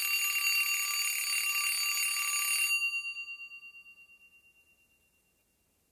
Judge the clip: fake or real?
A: real